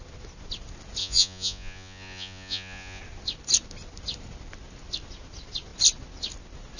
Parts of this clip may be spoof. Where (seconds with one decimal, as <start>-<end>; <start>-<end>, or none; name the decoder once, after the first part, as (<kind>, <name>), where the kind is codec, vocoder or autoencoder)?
1.0-3.0 (vocoder, Vocos)